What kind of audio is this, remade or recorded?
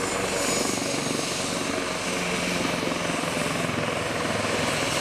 recorded